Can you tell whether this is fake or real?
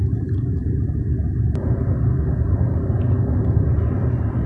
real